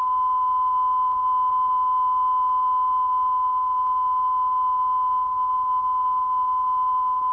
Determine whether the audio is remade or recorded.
recorded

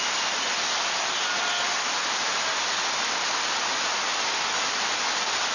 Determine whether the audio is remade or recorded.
recorded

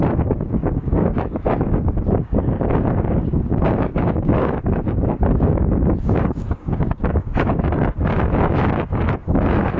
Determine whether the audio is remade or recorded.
remade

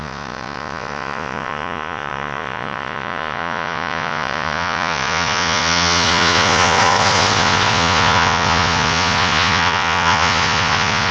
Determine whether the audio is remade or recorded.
remade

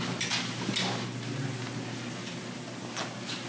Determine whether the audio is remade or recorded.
recorded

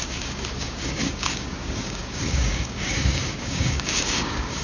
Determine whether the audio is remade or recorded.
remade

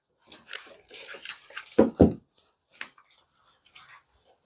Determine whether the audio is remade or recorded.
recorded